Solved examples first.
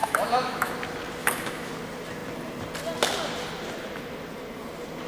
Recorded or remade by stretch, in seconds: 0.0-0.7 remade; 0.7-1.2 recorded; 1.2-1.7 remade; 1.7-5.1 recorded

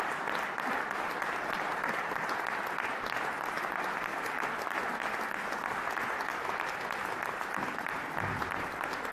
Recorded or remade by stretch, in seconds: 0.0-4.1 recorded; 4.1-4.9 remade; 4.9-9.1 recorded

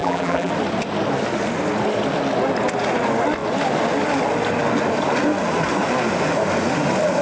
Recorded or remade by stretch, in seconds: 0.0-0.5 remade; 0.5-7.2 recorded

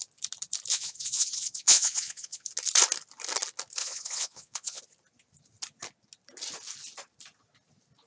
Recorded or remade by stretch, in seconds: 0.0-0.7 recorded; 0.7-2.5 remade; 2.5-3.8 recorded; 3.8-4.8 remade; 4.8-8.1 recorded

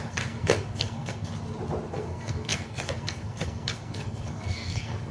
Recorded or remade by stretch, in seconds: 0.0-1.3 remade; 1.3-1.9 recorded; 1.9-5.1 remade

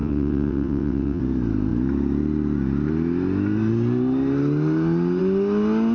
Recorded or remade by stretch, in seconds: 0.0-1.2 remade; 1.2-5.9 recorded